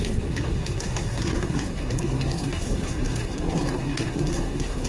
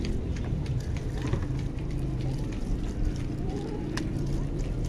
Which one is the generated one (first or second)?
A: first